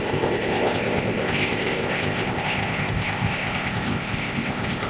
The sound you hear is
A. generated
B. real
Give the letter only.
A